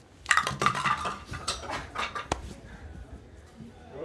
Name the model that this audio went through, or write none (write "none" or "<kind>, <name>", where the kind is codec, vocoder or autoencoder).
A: vocoder, BigVGAN v2